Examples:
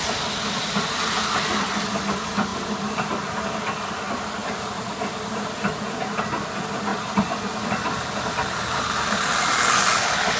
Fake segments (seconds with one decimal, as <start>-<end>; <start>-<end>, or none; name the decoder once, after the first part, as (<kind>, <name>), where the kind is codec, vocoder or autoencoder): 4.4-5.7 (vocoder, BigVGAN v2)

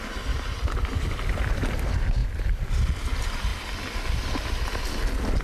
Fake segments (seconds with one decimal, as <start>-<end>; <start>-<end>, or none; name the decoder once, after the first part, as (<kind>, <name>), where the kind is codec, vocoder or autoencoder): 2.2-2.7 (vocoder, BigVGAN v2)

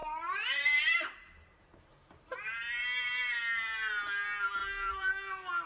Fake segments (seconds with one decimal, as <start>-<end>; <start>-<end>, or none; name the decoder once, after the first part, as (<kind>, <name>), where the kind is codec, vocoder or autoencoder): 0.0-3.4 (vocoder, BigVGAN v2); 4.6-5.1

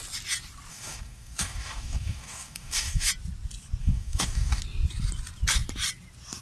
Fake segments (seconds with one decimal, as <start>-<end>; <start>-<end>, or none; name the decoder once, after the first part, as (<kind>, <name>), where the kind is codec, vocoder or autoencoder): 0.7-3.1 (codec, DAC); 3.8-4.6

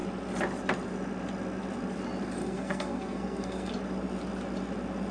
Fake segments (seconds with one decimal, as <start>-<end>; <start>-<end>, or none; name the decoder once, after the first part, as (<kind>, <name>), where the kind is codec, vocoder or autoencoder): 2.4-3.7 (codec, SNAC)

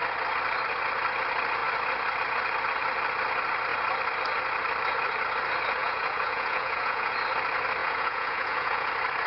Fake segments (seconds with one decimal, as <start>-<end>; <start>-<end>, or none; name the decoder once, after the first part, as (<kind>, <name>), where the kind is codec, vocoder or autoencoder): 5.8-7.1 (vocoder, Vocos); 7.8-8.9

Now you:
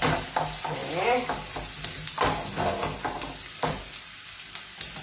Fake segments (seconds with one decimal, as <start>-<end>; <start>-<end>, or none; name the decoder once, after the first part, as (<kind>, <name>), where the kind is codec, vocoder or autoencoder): none